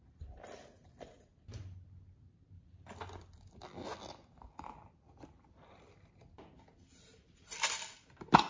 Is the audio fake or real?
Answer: real